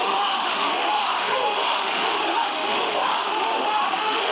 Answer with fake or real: fake